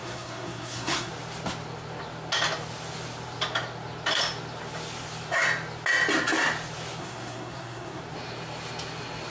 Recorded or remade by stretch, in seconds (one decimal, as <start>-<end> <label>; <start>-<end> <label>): 0.0-1.1 remade; 1.1-7.0 recorded; 7.0-8.0 remade; 8.0-9.3 recorded